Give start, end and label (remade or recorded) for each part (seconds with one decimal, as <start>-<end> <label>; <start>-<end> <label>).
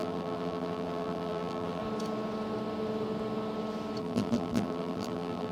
0.0-1.8 remade; 1.8-4.0 recorded; 4.0-5.5 remade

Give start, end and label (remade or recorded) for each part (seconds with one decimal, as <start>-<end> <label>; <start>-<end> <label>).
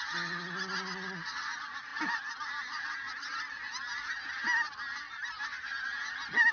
0.0-6.5 recorded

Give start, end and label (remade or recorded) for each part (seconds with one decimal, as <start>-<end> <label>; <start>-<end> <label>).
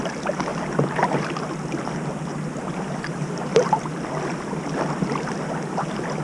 0.0-6.2 recorded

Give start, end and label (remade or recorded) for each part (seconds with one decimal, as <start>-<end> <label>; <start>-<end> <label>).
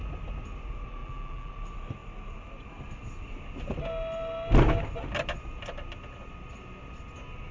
0.0-1.0 recorded; 1.0-1.5 remade; 1.5-7.5 recorded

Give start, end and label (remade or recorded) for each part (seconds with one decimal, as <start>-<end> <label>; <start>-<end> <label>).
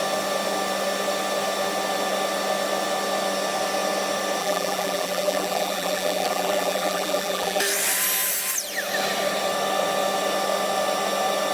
0.0-4.4 recorded; 4.4-7.6 remade; 7.6-11.5 recorded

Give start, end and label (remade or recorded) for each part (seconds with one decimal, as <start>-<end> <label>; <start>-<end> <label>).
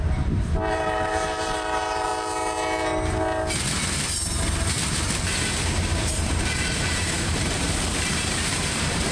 0.0-2.1 remade; 2.1-4.7 recorded; 4.7-9.1 remade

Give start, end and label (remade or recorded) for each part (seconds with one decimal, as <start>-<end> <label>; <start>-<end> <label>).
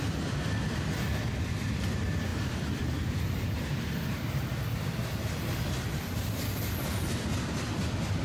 0.0-8.2 remade